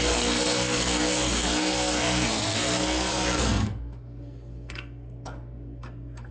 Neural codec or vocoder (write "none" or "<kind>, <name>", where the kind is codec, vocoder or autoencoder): codec, SNAC